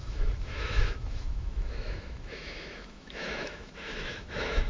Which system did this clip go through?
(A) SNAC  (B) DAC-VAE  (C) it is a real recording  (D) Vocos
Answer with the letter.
B